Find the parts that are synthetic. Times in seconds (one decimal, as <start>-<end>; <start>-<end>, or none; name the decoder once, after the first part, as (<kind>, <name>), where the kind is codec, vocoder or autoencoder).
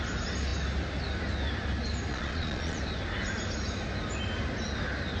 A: 2.1-2.8 (vocoder, Vocos)